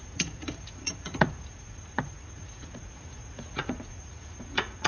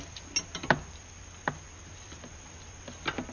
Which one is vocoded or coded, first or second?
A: first